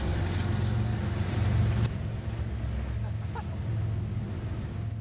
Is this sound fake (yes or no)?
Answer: no